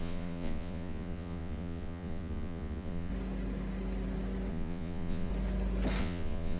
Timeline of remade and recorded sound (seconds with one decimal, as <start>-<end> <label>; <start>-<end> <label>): 0.0-3.1 remade; 3.1-4.5 recorded; 4.5-5.3 remade; 5.3-6.0 recorded; 6.0-6.6 remade

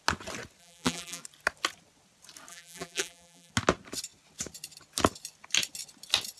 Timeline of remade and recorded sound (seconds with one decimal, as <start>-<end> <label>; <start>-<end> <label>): 0.0-0.6 recorded; 0.6-1.2 remade; 1.2-2.5 recorded; 2.5-3.5 remade; 3.5-6.4 recorded

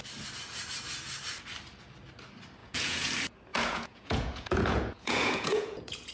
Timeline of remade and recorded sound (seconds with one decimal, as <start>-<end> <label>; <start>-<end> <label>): 0.0-2.6 recorded; 2.6-3.1 remade; 3.1-3.5 recorded; 3.5-6.1 remade

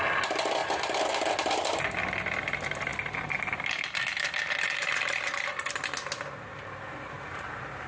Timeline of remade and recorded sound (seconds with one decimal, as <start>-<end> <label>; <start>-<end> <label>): 0.0-7.9 recorded

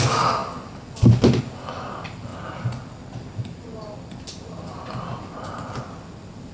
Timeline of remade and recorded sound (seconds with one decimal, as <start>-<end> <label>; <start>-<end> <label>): 0.0-6.5 recorded

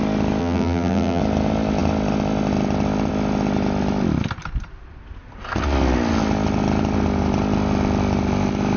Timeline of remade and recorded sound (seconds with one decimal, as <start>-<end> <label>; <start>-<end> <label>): 0.0-0.4 recorded; 0.4-1.2 remade; 1.2-8.8 recorded